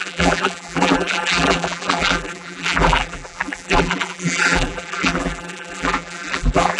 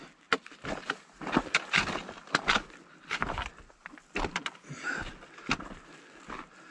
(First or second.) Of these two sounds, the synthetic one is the first